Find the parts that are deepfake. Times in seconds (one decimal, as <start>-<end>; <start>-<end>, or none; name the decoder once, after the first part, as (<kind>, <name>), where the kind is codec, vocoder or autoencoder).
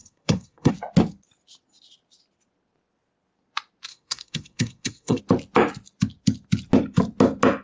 0.0-0.7 (codec, SNAC); 3.9-5.2